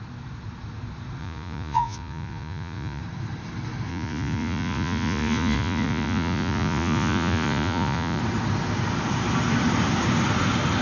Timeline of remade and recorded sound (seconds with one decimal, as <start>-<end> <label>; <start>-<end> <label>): 0.0-1.2 recorded; 1.2-3.0 remade; 3.0-3.9 recorded; 3.9-8.2 remade; 8.2-10.8 recorded